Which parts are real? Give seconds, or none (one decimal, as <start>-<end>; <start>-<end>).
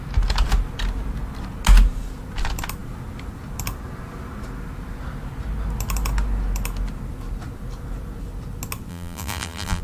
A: 0.0-8.9